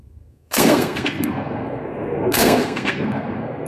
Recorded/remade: remade